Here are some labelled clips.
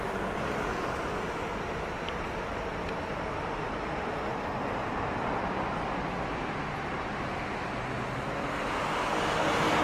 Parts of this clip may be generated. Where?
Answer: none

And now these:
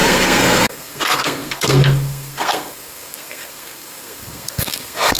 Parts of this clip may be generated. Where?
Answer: 0.0-5.2 (codec, SNAC)

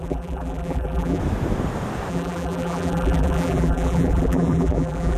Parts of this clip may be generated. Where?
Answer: 0.0-1.2 (vocoder, BigVGAN v2); 2.1-5.2

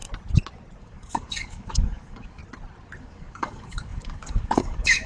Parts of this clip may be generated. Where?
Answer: 0.8-2.4 (codec, DAC); 3.0-5.1

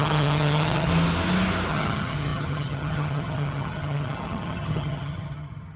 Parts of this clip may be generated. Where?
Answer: 0.0-0.9 (vocoder, HiFi-GAN); 1.7-5.8

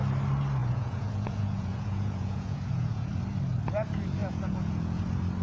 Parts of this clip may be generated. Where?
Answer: 0.6-3.1 (vocoder, Vocos); 4.2-5.0

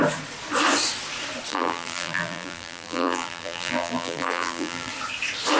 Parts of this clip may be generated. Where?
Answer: 1.5-4.9 (vocoder, BigVGAN v2)

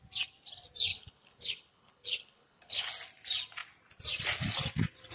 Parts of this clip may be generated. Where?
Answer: 0.9-2.9 (codec, HILCodec)